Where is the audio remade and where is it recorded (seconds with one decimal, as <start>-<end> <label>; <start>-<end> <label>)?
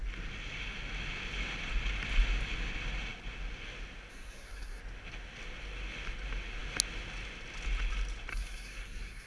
0.0-4.1 recorded; 4.1-4.8 remade; 4.8-8.3 recorded; 8.3-9.3 remade